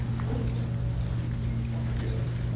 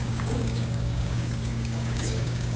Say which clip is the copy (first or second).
second